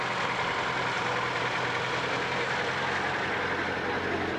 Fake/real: real